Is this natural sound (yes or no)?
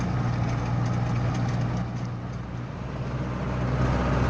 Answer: yes